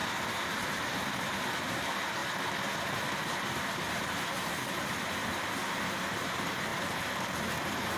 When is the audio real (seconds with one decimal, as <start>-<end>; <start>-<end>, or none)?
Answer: 0.0-8.0